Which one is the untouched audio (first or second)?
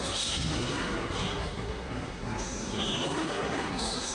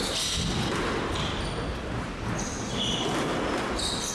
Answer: second